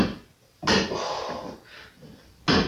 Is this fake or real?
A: real